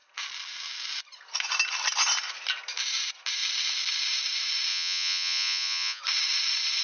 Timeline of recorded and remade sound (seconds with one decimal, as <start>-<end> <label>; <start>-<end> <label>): 0.0-4.7 recorded; 4.7-6.0 remade; 6.0-6.8 recorded